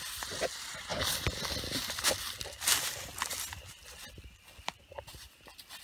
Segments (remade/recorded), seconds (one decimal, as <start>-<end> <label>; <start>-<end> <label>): 0.0-5.8 recorded